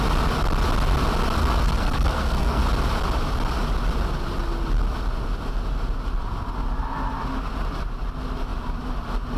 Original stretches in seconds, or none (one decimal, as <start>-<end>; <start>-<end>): 0.0-1.4; 2.6-9.4